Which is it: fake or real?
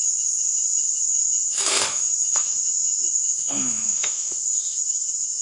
fake